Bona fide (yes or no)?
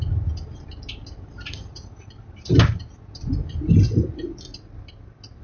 yes